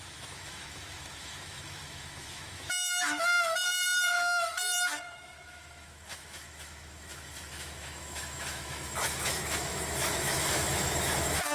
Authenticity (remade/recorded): remade